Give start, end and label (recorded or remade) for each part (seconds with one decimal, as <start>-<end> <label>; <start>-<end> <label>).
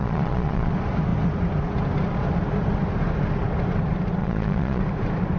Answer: 0.0-0.7 remade; 0.7-4.2 recorded; 4.2-4.8 remade; 4.8-5.4 recorded